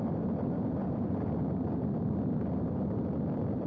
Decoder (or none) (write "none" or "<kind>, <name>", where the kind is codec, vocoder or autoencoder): none